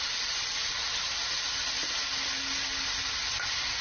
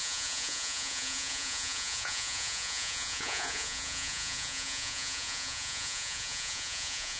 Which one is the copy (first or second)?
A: second